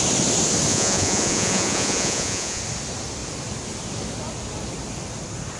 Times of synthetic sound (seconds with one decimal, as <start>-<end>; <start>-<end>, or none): 0.7-2.6